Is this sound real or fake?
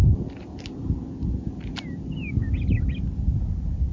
real